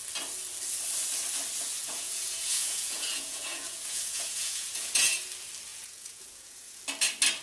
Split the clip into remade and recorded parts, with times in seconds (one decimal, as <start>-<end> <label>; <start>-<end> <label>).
0.0-1.7 recorded; 1.7-5.3 remade; 5.3-5.7 recorded; 5.7-6.8 remade; 6.8-7.4 recorded